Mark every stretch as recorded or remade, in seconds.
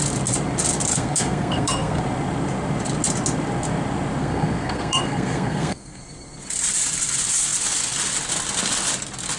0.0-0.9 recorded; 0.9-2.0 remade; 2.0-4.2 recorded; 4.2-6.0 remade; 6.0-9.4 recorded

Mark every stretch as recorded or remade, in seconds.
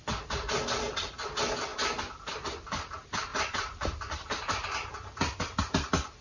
0.0-6.2 recorded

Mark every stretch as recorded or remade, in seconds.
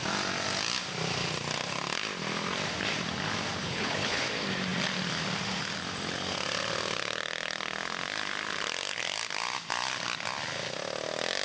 0.0-3.6 recorded; 3.6-4.2 remade; 4.2-11.4 recorded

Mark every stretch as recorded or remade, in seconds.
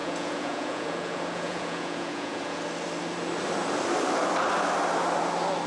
0.0-2.6 remade; 2.6-5.7 recorded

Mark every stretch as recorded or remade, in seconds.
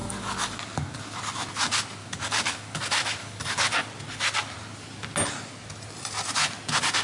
0.0-1.2 remade; 1.2-2.0 recorded; 2.0-2.8 remade; 2.8-3.2 recorded; 3.2-3.8 remade; 3.8-7.0 recorded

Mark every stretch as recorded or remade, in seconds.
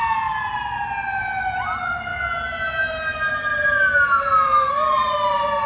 0.0-4.1 recorded; 4.1-5.7 remade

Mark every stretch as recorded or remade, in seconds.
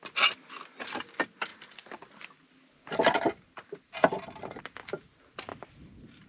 0.0-5.5 recorded; 5.5-6.3 remade